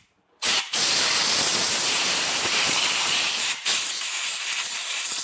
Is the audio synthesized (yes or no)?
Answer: yes